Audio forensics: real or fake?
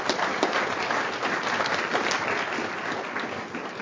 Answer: real